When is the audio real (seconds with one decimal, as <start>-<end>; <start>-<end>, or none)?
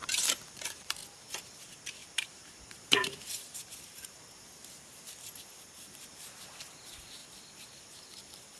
1.0-1.6; 7.2-7.8